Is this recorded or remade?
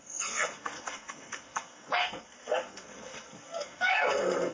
remade